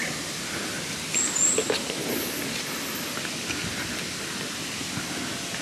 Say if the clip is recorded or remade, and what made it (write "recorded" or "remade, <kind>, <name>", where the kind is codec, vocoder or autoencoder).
recorded